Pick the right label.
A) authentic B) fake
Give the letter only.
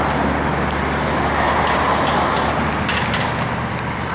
A